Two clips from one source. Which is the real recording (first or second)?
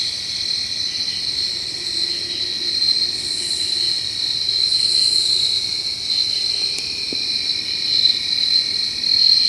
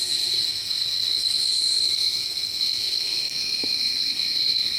first